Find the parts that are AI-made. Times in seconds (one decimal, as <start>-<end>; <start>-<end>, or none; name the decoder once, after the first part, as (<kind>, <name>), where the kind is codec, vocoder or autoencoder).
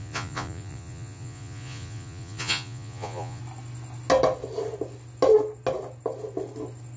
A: 0.0-3.4 (vocoder, Vocos)